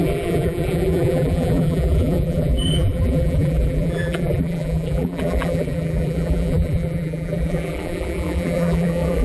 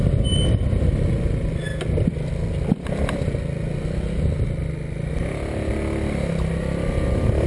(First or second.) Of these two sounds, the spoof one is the first